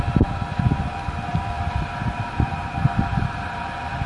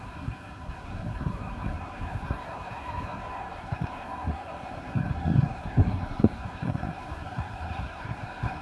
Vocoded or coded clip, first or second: second